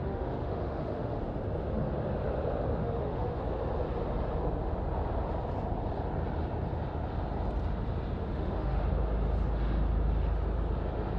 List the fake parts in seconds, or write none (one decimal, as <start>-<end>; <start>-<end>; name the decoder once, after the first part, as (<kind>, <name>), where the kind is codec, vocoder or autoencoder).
0.0-1.2 (autoencoder, DAC-VAE); 2.8-3.4; 8.2-8.8